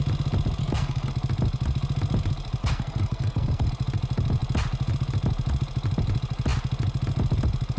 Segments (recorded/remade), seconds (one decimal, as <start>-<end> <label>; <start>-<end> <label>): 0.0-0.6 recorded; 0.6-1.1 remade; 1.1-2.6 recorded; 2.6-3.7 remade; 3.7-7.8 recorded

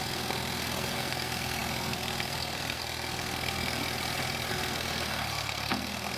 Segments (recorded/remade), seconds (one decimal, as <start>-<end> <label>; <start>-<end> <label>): 0.0-3.8 remade; 3.8-4.5 recorded; 4.5-6.2 remade

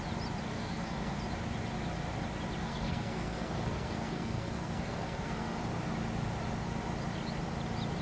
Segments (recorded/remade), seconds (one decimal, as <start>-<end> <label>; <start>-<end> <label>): 0.0-0.5 recorded; 0.5-1.2 remade; 1.2-2.6 recorded; 2.6-5.6 remade; 5.6-8.0 recorded